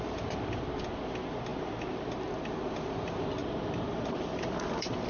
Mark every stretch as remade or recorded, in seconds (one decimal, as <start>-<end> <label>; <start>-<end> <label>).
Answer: 0.0-1.5 recorded; 1.5-2.2 remade; 2.2-3.4 recorded; 3.4-5.1 remade